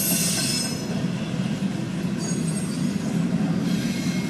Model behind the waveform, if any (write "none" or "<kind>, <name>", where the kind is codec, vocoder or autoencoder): none